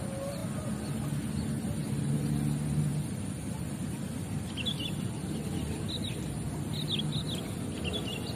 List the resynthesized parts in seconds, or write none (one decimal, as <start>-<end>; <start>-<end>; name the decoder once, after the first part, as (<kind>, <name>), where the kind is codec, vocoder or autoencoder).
none

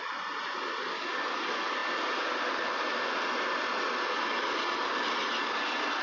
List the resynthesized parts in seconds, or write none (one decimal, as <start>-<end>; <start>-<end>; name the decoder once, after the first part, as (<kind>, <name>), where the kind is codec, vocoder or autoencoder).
none

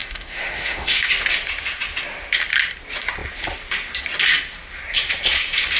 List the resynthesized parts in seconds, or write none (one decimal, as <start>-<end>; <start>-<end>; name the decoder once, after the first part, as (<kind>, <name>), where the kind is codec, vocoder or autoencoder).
0.0-1.1 (autoencoder, DAC-VAE)

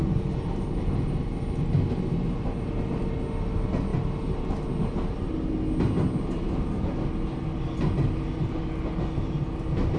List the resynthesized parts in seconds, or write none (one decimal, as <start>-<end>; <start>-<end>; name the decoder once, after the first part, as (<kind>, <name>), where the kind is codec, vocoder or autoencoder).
none

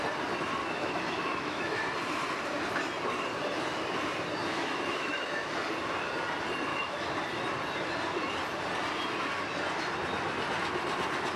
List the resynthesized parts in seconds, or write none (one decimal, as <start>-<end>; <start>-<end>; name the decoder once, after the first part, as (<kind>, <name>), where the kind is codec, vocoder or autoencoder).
0.6-1.8 (autoencoder, DAC-VAE); 4.4-5.5; 6.7-7.2

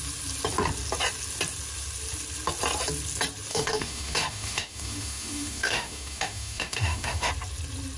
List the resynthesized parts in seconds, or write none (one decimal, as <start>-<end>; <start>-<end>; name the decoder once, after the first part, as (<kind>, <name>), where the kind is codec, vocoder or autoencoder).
3.5-7.3 (autoencoder, DAC-VAE)